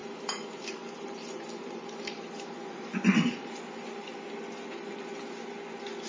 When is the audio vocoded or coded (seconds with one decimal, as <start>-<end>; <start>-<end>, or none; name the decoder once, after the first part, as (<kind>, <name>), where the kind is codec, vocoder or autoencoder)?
0.0-3.7 (vocoder, BigVGAN v2)